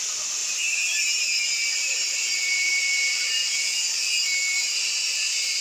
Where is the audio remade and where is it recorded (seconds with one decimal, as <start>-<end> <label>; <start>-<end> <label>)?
0.0-0.4 recorded; 0.4-1.2 remade; 1.2-1.6 recorded; 1.6-4.9 remade; 4.9-5.6 recorded